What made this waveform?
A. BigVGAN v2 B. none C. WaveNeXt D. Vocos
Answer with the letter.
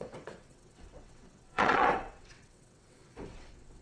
C